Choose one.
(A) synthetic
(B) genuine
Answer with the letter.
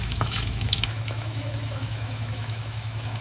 A